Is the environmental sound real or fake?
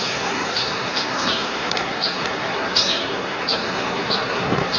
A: fake